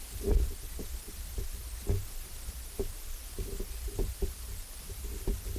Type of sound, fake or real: real